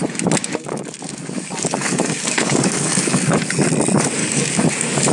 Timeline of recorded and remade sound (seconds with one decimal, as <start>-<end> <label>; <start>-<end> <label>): 0.0-0.4 recorded; 0.4-3.5 remade; 3.5-4.2 recorded; 4.2-5.1 remade